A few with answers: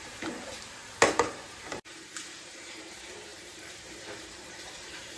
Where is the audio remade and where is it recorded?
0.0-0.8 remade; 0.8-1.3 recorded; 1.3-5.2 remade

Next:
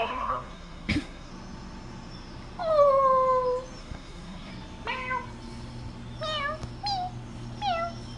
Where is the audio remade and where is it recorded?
0.0-1.3 remade; 1.3-3.8 recorded; 3.8-4.5 remade; 4.5-8.2 recorded

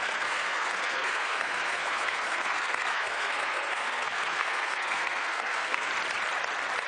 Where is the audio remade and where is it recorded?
0.0-5.9 remade; 5.9-6.9 recorded

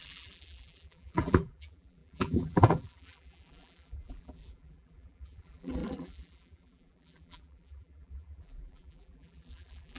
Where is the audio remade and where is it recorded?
0.0-10.0 remade

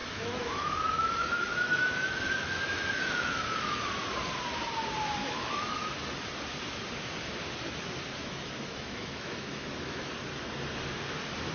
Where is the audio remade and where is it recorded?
0.0-3.9 remade; 3.9-5.2 recorded; 5.2-5.9 remade; 5.9-8.2 recorded; 8.2-10.1 remade; 10.1-11.5 recorded